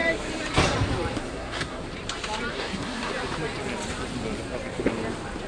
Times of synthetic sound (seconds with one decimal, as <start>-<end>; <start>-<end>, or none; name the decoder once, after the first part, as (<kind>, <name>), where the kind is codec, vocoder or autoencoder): 1.2-1.8 (codec, SNAC); 2.5-3.1